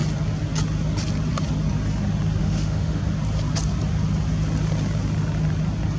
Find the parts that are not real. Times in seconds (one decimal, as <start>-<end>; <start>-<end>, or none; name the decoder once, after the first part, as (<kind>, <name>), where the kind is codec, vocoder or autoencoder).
2.4-3.0 (autoencoder, DAC-VAE)